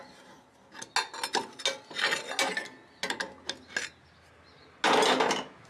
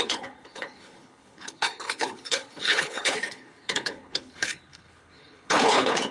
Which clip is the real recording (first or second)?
first